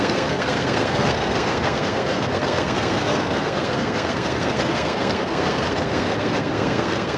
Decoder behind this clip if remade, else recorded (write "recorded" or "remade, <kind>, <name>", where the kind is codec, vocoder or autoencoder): remade, codec, SNAC